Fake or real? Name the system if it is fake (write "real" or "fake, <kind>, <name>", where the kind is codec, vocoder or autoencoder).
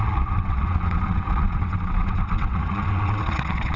fake, vocoder, WaveNeXt